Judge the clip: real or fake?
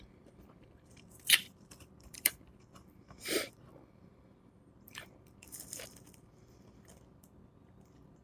fake